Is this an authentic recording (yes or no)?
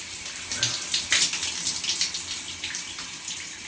yes